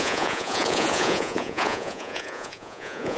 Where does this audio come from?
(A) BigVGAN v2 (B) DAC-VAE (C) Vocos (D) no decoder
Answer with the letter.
C